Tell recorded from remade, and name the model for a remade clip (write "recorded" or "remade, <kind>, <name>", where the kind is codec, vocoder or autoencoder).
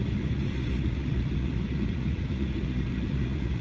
remade, vocoder, Vocos